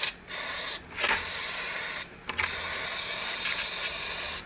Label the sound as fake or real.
real